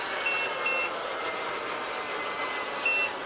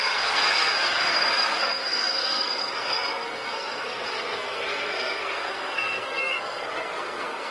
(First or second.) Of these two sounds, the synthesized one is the second